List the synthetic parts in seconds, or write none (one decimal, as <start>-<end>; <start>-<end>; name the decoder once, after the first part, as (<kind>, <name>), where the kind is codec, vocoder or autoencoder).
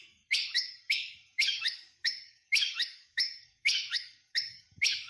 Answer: 0.0-5.1 (codec, DAC)